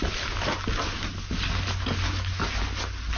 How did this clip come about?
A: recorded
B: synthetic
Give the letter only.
A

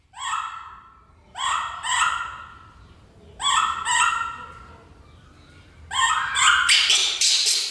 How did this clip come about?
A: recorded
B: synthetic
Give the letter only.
A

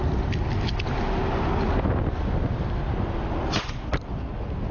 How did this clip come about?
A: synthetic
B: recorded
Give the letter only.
B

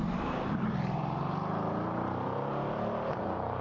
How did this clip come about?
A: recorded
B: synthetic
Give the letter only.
B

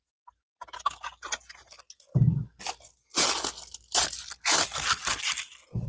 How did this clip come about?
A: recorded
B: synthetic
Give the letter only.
A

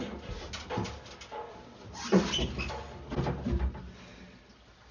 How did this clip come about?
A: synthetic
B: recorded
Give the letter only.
B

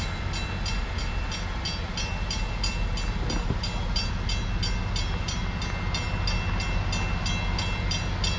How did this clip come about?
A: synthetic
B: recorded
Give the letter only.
B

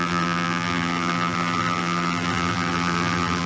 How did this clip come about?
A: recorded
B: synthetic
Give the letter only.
B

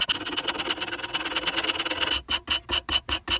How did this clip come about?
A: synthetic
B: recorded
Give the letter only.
B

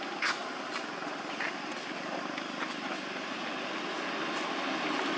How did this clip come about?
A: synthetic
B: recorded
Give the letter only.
B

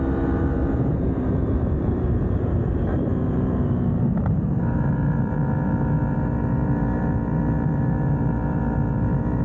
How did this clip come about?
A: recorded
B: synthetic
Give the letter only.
B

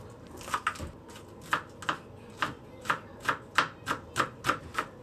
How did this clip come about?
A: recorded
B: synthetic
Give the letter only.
A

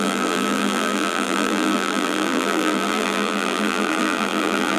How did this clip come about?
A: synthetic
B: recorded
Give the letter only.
A